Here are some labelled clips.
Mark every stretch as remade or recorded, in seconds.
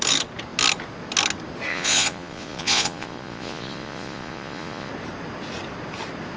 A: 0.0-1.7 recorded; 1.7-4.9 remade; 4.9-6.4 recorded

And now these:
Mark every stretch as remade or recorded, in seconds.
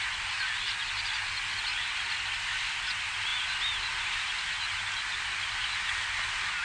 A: 0.0-6.6 recorded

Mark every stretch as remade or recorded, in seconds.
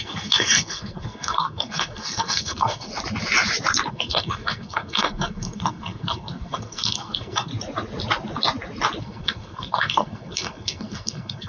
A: 0.0-2.9 remade; 2.9-3.9 recorded; 3.9-7.5 remade; 7.5-9.0 recorded; 9.0-11.5 remade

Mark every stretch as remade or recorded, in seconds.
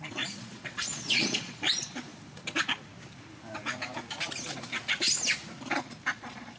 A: 0.0-2.1 remade; 2.1-6.1 recorded; 6.1-6.6 remade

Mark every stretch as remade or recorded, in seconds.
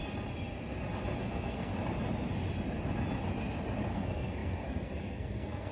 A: 0.0-1.2 recorded; 1.2-1.7 remade; 1.7-3.9 recorded; 3.9-5.7 remade